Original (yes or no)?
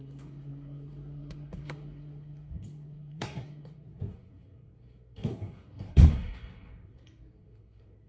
no